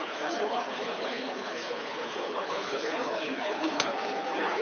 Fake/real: fake